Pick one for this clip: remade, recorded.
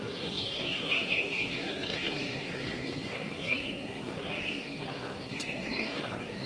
remade